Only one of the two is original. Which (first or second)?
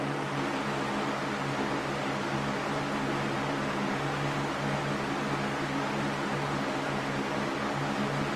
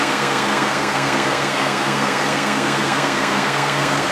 first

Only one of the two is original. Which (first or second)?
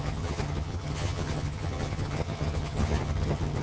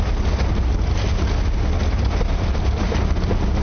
second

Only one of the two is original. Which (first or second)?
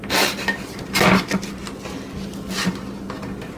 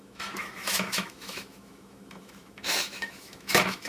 first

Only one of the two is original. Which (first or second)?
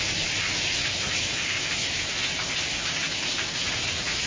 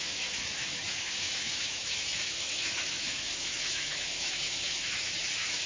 first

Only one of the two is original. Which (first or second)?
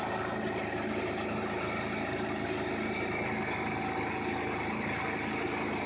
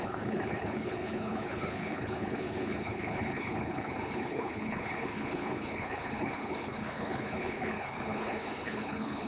first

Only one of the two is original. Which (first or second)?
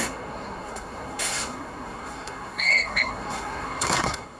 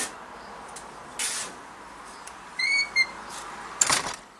second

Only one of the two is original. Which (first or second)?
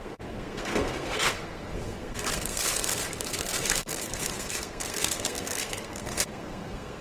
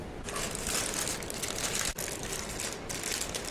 second